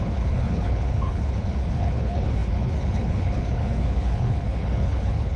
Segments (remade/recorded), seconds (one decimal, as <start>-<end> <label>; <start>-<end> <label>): 0.0-5.4 remade